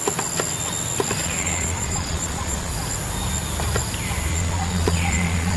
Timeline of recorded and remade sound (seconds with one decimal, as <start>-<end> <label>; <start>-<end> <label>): 0.0-1.2 recorded; 1.2-2.7 remade; 2.7-4.3 recorded; 4.3-5.6 remade